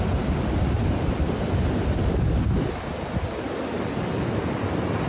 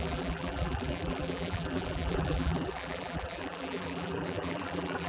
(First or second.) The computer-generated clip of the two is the second